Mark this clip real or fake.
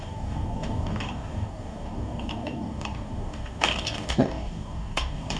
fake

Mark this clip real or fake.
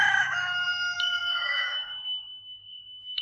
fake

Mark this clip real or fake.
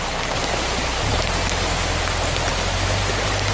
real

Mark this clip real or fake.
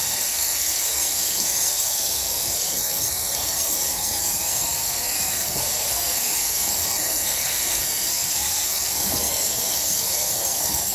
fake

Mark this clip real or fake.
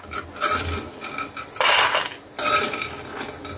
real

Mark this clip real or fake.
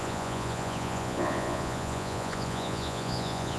fake